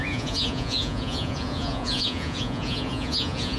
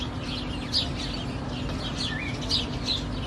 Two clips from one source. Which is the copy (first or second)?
first